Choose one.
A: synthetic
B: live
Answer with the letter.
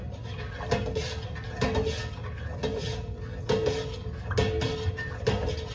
B